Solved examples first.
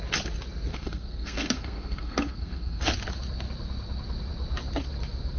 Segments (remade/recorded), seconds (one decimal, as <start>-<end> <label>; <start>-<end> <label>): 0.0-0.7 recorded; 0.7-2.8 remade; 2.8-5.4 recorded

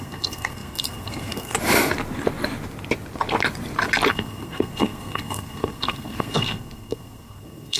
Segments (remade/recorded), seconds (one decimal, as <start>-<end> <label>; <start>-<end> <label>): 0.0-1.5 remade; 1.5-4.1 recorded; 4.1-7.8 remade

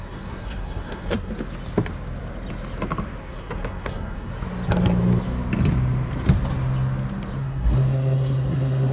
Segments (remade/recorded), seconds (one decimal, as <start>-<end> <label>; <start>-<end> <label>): 0.0-1.3 remade; 1.3-3.2 recorded; 3.2-4.3 remade; 4.3-7.4 recorded; 7.4-8.9 remade